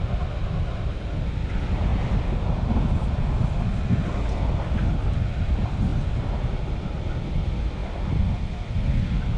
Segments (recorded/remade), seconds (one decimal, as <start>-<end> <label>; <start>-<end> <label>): 0.0-5.9 recorded; 5.9-7.2 remade; 7.2-9.4 recorded